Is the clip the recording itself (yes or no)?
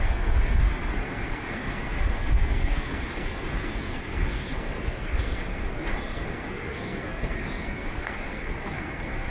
no